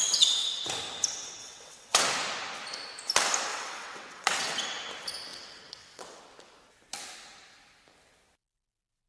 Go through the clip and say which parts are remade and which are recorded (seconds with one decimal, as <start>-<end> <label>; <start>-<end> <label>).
0.0-0.6 remade; 0.6-1.4 recorded; 1.4-2.0 remade; 2.0-3.5 recorded; 3.5-4.6 remade; 4.6-5.3 recorded; 5.3-6.2 remade; 6.2-9.1 recorded